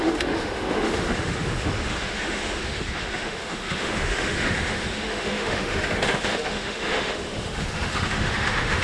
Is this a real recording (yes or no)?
no